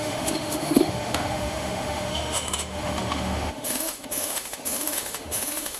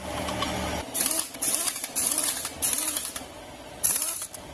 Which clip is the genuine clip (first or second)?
second